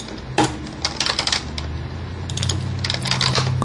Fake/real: real